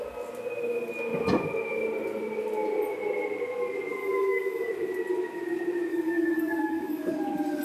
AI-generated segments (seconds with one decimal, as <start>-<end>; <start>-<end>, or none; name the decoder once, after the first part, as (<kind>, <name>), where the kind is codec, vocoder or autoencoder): 4.0-4.7 (codec, DAC); 5.9-7.1